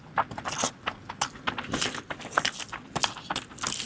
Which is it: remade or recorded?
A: recorded